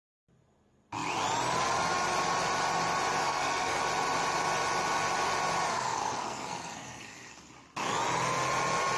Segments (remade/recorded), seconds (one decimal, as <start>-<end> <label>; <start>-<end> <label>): 0.0-3.2 recorded; 3.2-3.8 remade; 3.8-5.7 recorded; 5.7-7.5 remade; 7.5-9.0 recorded